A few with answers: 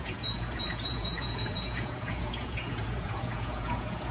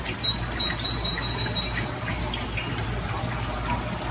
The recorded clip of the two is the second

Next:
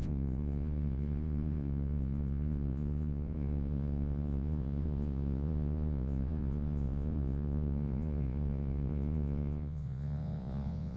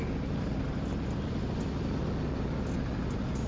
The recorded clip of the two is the second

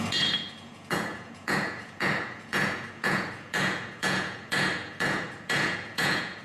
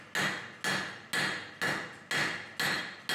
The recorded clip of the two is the second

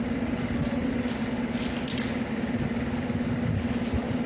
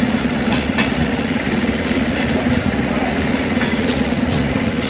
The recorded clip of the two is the first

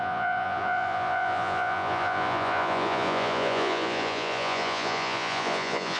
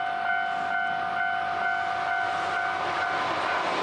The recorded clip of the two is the second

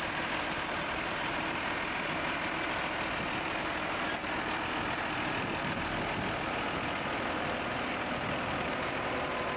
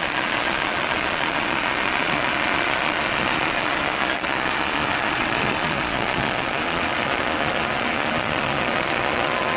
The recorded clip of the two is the first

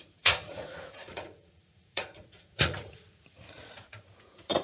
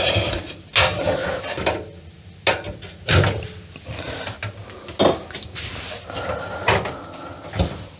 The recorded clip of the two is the second